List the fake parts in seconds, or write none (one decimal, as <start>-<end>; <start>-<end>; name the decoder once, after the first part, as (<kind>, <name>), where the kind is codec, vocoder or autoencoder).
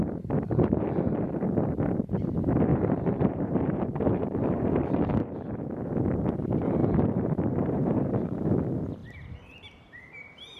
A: 2.7-5.2 (vocoder, BigVGAN v2); 6.8-8.0; 9.0-10.6